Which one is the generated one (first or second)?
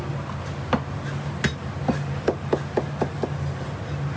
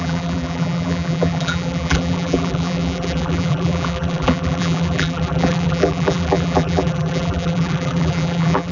second